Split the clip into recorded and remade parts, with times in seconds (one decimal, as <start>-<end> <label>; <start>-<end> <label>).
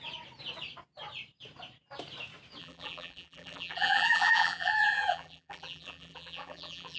0.0-2.6 recorded; 2.6-7.0 remade